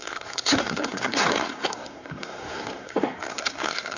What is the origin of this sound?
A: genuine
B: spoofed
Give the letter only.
B